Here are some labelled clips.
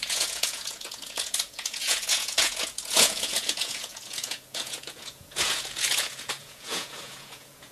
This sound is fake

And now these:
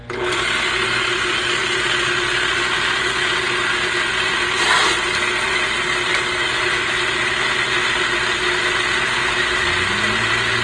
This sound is real